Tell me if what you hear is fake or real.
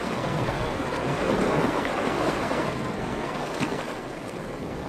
fake